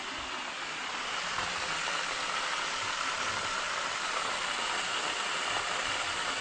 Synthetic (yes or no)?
no